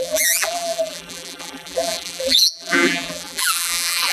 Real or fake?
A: fake